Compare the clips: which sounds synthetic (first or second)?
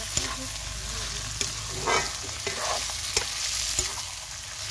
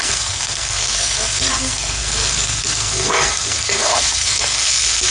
second